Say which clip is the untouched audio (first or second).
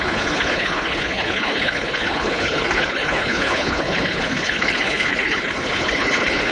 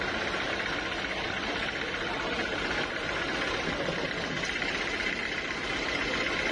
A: second